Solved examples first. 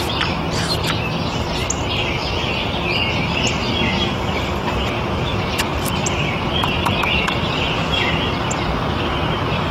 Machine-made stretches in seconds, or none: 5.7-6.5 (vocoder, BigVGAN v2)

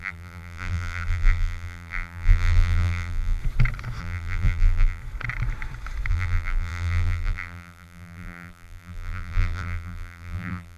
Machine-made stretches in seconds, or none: 0.0-3.4 (vocoder, BigVGAN v2); 4.0-5.0; 6.1-10.8

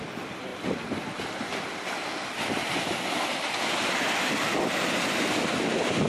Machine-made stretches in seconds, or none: none

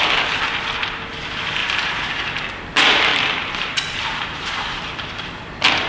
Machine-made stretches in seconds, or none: 1.6-2.3 (vocoder, BigVGAN v2); 3.1-4.8

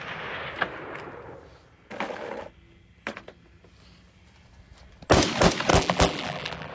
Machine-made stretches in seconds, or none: 5.7-6.7 (vocoder, BigVGAN v2)

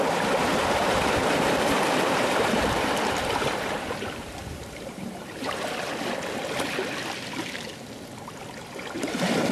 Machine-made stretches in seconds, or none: 0.4-5.6 (vocoder, BigVGAN v2)

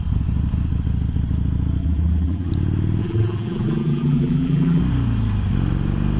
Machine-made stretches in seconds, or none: 1.8-2.5 (vocoder, BigVGAN v2); 3.0-4.8